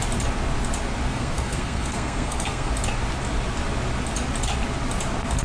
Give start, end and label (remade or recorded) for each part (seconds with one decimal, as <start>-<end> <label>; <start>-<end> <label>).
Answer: 0.0-1.1 recorded; 1.1-2.7 remade; 2.7-5.4 recorded